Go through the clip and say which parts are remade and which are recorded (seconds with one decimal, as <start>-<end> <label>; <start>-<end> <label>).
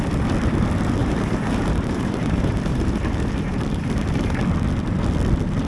0.0-1.0 recorded; 1.0-4.4 remade; 4.4-5.7 recorded